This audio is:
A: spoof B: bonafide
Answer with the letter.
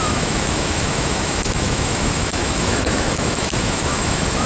A